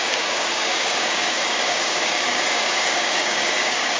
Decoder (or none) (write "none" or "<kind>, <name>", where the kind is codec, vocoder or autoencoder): codec, DAC